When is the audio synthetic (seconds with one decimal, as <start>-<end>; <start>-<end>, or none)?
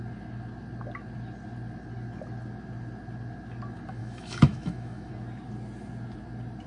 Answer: 4.0-5.1